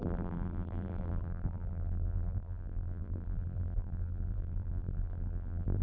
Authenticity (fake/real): fake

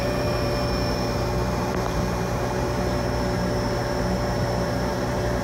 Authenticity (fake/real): fake